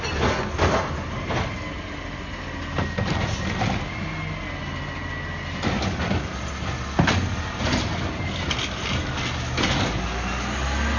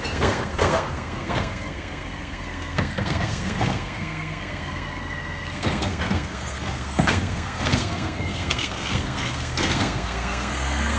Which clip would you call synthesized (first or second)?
second